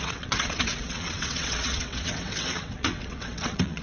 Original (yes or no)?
no